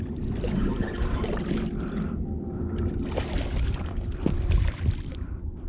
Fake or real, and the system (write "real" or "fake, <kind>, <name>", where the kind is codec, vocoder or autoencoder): fake, vocoder, BigVGAN v2